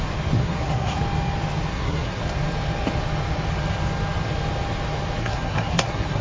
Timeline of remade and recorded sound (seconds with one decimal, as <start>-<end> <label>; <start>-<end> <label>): 0.0-0.4 recorded; 0.4-1.0 remade; 1.0-1.7 recorded; 1.7-2.2 remade; 2.2-5.2 recorded; 5.2-6.2 remade